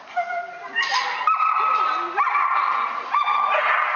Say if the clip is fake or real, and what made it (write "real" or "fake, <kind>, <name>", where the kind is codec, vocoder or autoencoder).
real